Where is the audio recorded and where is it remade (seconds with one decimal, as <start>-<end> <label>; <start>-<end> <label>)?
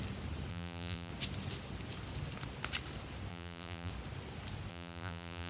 0.0-0.5 recorded; 0.5-1.1 remade; 1.1-3.3 recorded; 3.3-3.9 remade; 3.9-4.7 recorded; 4.7-5.5 remade